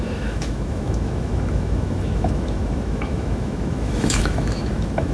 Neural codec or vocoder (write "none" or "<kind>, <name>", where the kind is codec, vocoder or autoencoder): autoencoder, DAC-VAE